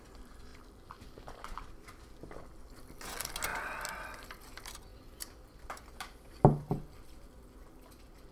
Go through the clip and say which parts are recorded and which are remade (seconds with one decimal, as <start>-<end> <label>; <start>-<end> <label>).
0.0-0.5 recorded; 0.5-2.0 remade; 2.0-4.9 recorded; 4.9-6.4 remade; 6.4-8.3 recorded